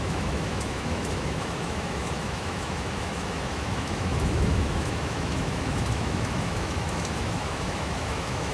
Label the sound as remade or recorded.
remade